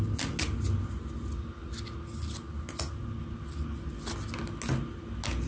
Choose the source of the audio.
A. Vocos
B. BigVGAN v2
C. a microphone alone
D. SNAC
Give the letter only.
C